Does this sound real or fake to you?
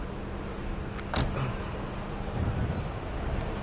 real